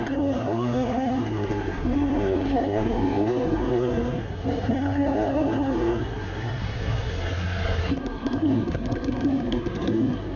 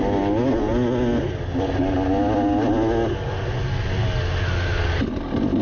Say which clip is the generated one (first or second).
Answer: first